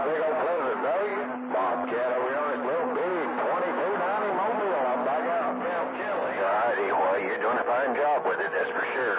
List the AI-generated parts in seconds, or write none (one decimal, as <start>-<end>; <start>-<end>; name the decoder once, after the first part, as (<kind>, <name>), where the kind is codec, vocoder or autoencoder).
0.0-3.1 (vocoder, BigVGAN v2); 4.6-6.2; 8.6-9.2